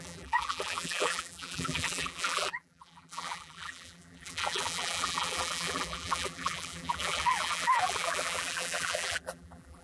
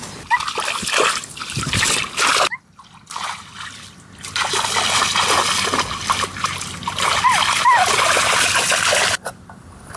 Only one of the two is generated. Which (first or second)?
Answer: first